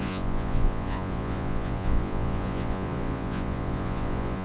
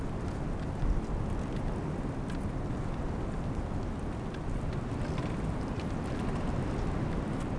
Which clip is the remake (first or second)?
first